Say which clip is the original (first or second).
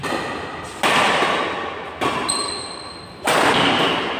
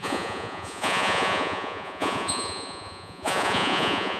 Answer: first